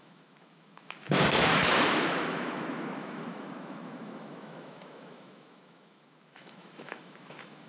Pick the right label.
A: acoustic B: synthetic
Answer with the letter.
B